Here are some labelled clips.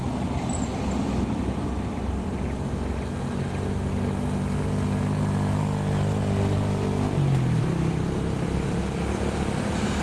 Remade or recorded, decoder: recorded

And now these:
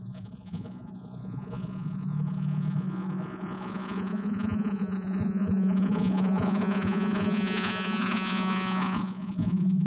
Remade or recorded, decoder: remade, vocoder, Vocos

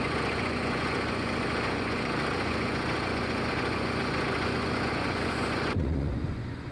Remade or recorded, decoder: remade, vocoder, Vocos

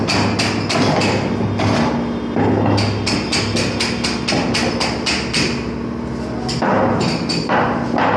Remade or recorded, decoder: recorded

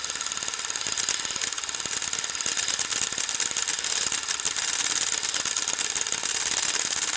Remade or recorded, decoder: recorded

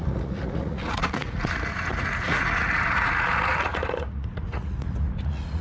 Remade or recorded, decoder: remade, vocoder, Vocos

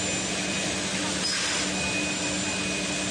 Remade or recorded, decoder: recorded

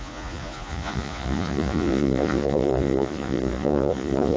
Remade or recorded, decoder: remade, vocoder, Vocos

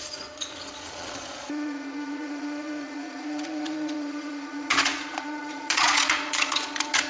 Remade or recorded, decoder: remade, vocoder, Vocos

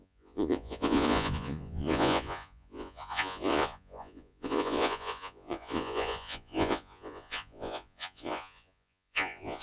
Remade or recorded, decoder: remade, vocoder, Vocos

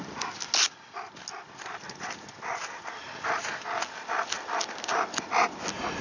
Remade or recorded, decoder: recorded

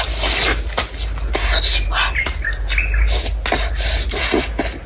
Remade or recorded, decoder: recorded